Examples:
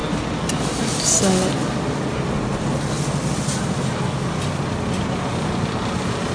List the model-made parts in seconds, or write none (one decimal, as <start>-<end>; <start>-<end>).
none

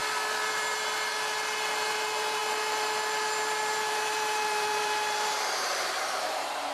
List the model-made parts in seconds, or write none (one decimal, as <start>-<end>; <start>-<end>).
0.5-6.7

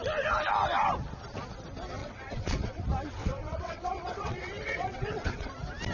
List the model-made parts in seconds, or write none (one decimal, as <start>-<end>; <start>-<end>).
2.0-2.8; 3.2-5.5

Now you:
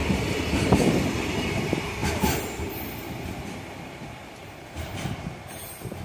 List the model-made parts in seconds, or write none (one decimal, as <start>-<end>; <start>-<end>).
2.0-5.4

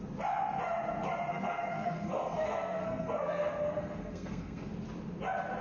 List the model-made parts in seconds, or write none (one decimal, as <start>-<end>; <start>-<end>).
1.3-4.7

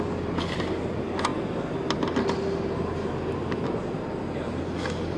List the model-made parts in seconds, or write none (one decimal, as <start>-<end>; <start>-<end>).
none

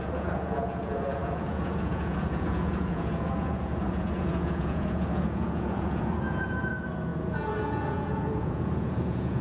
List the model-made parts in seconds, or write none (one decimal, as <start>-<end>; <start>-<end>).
0.0-9.4

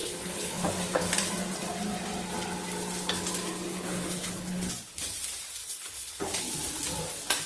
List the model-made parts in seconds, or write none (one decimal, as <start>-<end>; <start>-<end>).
0.0-0.7; 3.7-4.7; 5.6-6.5